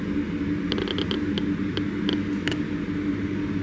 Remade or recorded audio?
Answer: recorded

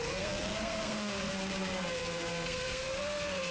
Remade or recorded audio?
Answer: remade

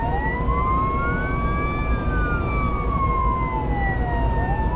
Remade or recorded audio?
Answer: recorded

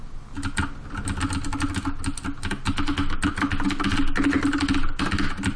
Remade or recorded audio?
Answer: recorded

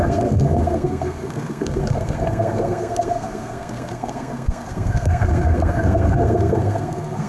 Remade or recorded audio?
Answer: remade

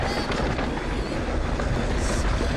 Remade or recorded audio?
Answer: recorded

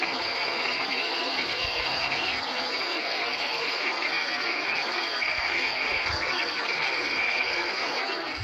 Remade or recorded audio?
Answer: remade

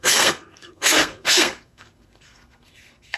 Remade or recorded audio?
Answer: remade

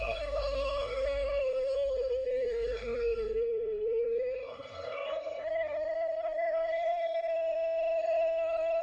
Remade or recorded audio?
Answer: remade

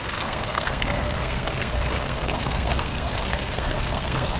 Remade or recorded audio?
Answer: remade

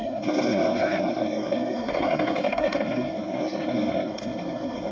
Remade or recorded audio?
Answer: remade